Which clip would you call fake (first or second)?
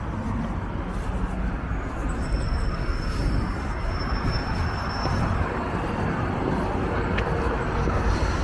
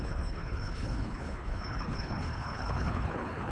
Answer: second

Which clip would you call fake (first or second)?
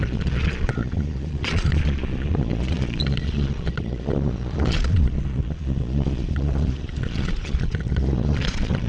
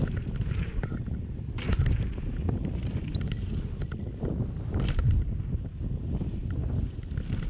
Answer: first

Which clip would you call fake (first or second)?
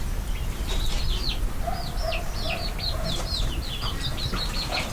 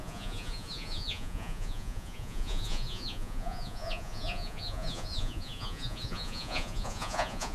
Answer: second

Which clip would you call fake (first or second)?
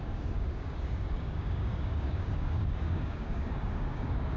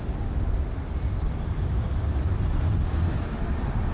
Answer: first